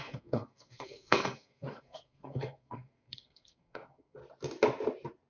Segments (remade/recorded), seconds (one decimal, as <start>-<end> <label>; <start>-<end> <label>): 0.0-4.2 remade; 4.2-5.3 recorded